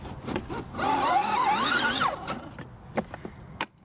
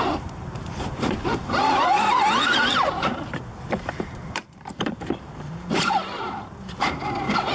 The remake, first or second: second